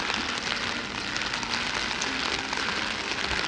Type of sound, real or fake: real